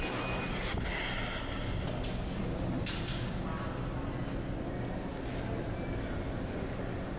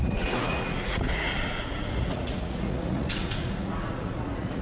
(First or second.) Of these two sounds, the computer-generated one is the second